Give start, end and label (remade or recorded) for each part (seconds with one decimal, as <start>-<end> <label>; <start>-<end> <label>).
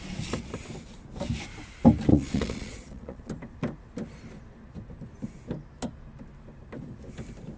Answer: 0.0-2.1 recorded; 2.1-3.3 remade; 3.3-7.6 recorded